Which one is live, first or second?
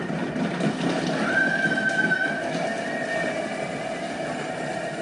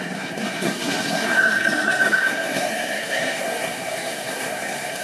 first